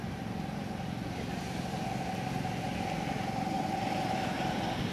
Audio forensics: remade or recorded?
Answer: recorded